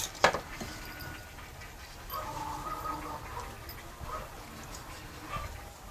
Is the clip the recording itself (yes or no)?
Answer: yes